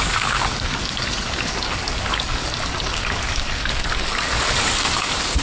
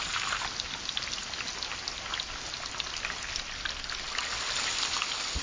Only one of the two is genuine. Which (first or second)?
second